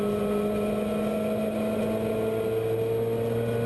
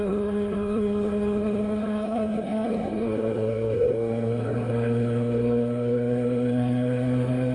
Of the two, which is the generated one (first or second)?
second